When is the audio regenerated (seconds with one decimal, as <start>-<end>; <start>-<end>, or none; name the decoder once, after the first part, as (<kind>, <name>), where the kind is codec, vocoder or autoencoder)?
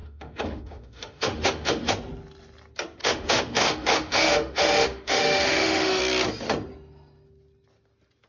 0.0-1.9 (autoencoder, DAC-VAE); 3.0-6.0